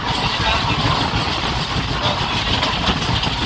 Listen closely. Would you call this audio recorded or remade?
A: recorded